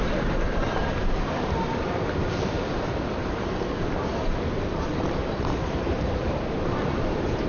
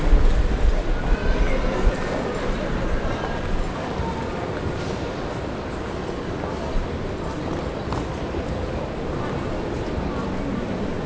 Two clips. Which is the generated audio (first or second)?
first